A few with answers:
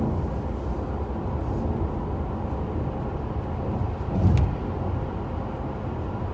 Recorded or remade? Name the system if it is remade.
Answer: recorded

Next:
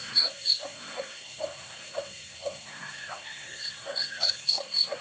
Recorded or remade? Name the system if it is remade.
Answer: remade, codec, SNAC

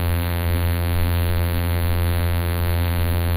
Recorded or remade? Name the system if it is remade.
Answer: remade, vocoder, BigVGAN v2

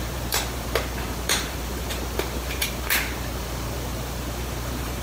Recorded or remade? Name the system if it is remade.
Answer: remade, vocoder, BigVGAN v2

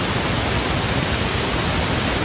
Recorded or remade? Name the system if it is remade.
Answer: recorded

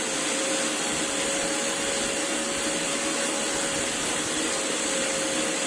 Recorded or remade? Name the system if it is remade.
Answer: recorded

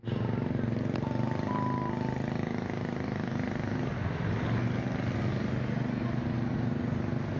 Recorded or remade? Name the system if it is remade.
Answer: recorded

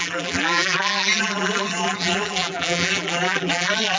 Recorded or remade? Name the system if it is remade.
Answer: remade, vocoder, BigVGAN v2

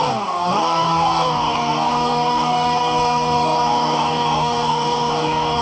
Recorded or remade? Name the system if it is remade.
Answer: remade, codec, DAC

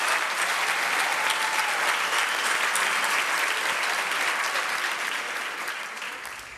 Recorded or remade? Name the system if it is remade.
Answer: recorded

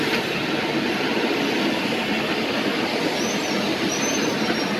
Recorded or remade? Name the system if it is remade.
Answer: recorded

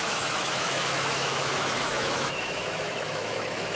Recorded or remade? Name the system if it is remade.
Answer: remade, autoencoder, DAC-VAE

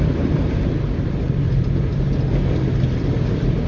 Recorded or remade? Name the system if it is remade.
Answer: recorded